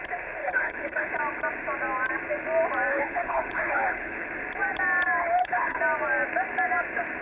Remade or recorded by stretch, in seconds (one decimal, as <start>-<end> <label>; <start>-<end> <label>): 0.0-0.4 recorded; 0.4-1.1 remade; 1.1-2.9 recorded; 2.9-4.3 remade; 4.3-5.2 recorded; 5.2-5.8 remade; 5.8-7.2 recorded